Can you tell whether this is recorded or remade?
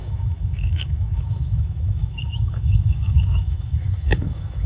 remade